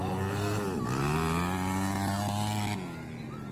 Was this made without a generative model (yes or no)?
yes